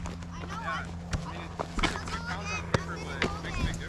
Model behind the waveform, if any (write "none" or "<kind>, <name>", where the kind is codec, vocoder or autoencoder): none